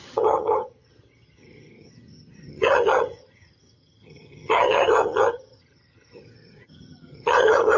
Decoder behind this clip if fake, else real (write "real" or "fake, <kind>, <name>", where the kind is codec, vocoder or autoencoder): fake, vocoder, HiFi-GAN